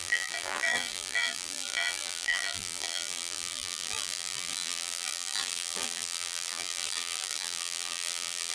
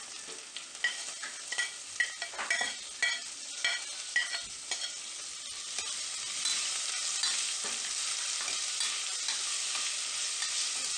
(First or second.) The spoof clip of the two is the first